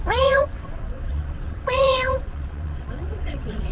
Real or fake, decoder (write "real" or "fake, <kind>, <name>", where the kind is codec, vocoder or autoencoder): fake, vocoder, WaveNeXt